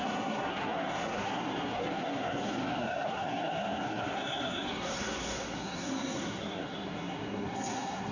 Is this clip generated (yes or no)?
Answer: yes